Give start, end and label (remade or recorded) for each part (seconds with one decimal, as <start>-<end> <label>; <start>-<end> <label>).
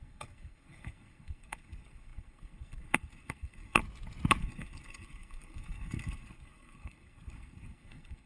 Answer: 0.0-3.8 remade; 3.8-4.4 recorded; 4.4-8.3 remade